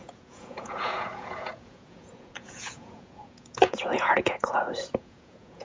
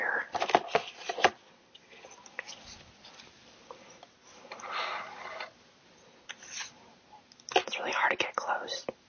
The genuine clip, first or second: second